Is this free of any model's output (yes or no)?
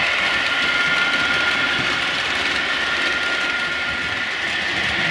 yes